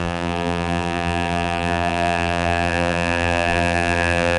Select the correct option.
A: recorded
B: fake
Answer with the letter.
B